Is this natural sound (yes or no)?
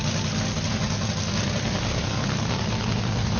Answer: yes